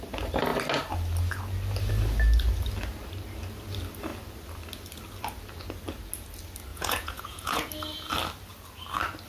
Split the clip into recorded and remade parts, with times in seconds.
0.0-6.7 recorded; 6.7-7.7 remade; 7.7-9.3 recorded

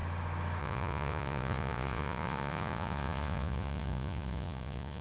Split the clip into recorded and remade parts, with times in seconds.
0.0-0.6 recorded; 0.6-5.0 remade

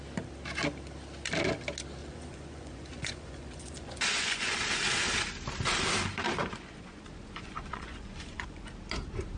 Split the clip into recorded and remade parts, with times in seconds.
0.0-2.0 recorded; 2.0-4.6 remade; 4.6-6.4 recorded; 6.4-8.7 remade; 8.7-9.4 recorded

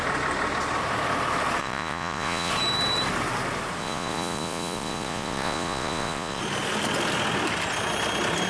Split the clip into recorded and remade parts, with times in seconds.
0.0-1.6 recorded; 1.6-2.5 remade; 2.5-3.8 recorded; 3.8-6.4 remade; 6.4-8.5 recorded